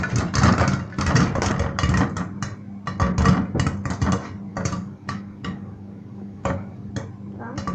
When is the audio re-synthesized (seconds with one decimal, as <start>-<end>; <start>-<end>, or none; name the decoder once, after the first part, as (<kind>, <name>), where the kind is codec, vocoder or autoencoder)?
4.5-6.9 (codec, DAC)